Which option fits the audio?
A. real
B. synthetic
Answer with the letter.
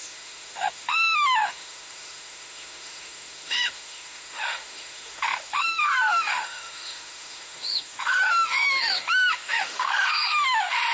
B